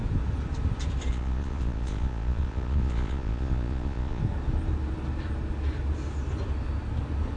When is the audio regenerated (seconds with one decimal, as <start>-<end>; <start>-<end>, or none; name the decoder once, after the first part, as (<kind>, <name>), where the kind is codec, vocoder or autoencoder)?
1.1-4.2 (vocoder, Vocos)